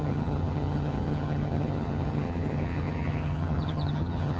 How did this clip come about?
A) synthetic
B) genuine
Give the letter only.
A